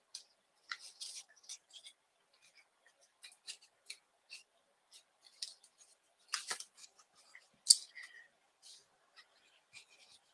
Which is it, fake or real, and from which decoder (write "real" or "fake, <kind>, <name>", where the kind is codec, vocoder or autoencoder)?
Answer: real